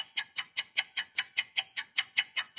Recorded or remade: remade